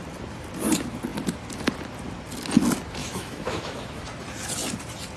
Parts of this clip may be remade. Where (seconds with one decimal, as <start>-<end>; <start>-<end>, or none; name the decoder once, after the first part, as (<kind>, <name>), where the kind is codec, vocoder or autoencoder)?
3.0-4.0 (autoencoder, DAC-VAE)